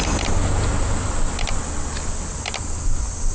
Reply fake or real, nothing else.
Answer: real